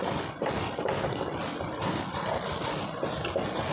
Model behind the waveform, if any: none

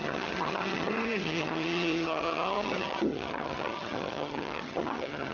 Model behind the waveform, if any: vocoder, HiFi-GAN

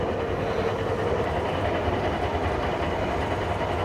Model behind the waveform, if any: none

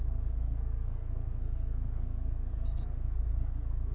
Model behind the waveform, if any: codec, SNAC